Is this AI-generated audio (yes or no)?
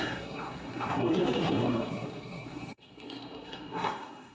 yes